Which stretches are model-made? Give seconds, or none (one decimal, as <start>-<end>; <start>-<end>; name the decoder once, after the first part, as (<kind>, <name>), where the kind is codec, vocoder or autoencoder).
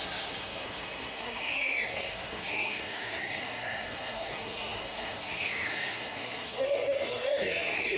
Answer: 0.0-8.0 (codec, SNAC)